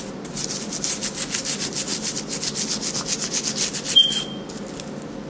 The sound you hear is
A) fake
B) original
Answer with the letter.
B